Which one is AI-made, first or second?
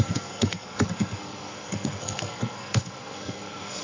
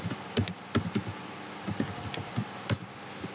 first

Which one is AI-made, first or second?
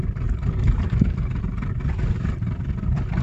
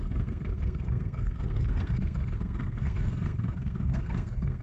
second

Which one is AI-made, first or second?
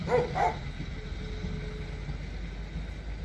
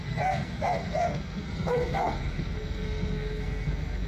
second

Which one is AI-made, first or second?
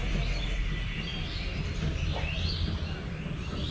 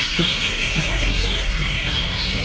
second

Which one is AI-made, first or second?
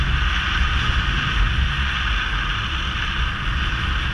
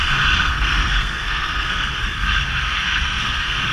second